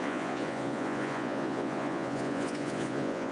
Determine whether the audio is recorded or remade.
remade